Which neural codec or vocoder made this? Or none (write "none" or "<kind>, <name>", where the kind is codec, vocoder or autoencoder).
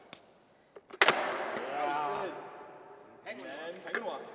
none